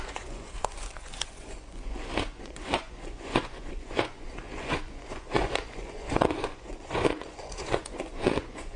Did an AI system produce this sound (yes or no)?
yes